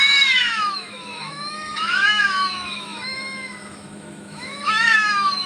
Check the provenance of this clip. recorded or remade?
remade